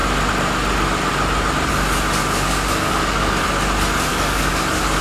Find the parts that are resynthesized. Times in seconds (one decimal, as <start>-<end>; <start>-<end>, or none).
2.2-3.4; 4.1-5.0